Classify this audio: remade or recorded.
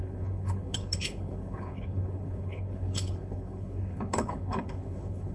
remade